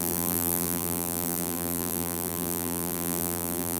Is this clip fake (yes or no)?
yes